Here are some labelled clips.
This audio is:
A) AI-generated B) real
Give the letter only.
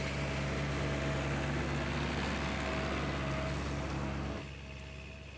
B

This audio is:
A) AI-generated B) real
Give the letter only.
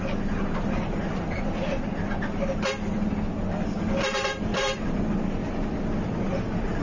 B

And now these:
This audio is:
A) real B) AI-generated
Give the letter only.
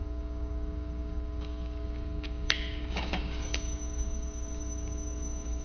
B